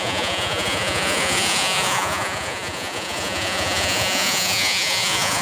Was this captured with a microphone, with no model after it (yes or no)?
no